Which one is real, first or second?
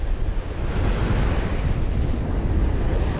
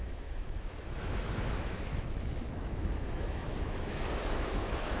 first